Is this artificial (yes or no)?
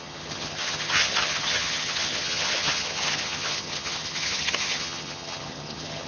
yes